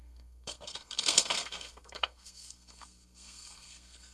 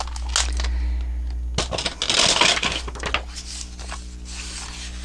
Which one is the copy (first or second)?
first